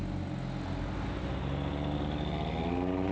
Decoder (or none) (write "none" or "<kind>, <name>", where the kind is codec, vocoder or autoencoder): none